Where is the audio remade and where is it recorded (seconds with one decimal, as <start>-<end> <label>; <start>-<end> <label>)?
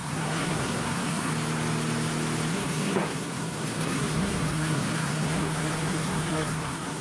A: 0.0-1.3 remade; 1.3-2.5 recorded; 2.5-7.0 remade